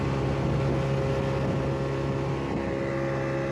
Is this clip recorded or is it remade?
recorded